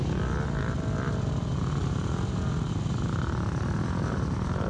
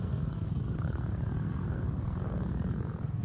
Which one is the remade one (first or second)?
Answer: second